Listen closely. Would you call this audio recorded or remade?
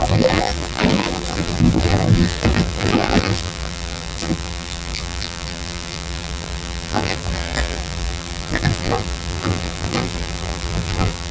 remade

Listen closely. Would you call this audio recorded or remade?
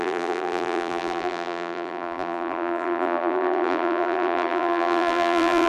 remade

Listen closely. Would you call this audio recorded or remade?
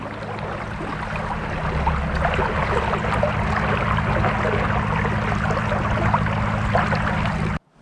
recorded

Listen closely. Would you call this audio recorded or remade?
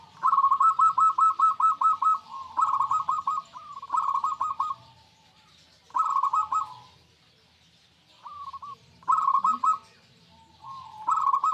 remade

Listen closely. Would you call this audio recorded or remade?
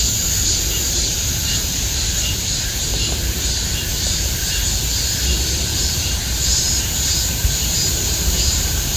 remade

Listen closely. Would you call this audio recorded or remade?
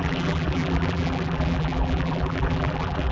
remade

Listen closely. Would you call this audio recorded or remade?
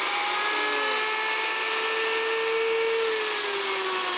recorded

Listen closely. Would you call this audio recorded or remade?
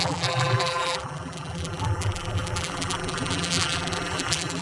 remade